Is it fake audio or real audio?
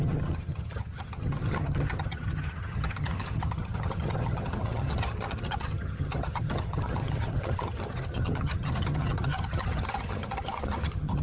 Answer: fake